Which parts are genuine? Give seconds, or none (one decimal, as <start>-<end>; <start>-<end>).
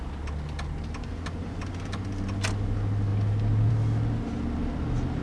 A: 0.0-5.2